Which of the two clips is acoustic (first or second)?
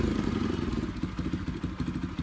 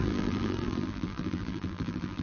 first